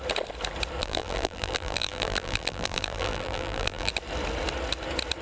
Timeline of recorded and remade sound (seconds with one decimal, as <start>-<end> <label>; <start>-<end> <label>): 0.0-0.8 recorded; 0.8-3.9 remade; 3.9-5.2 recorded